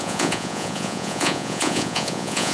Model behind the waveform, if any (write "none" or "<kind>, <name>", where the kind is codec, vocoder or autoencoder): vocoder, Vocos